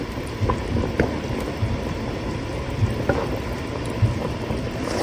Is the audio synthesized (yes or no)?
yes